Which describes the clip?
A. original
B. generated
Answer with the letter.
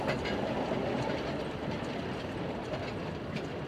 A